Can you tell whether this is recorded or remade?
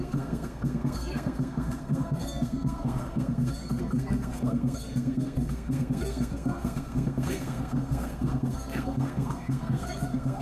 remade